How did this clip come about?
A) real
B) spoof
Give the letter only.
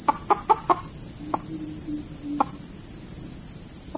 A